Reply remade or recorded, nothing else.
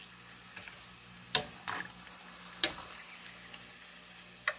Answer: recorded